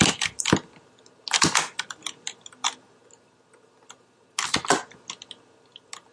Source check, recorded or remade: recorded